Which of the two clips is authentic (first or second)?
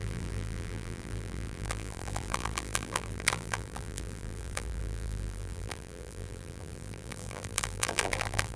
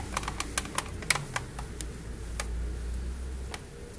second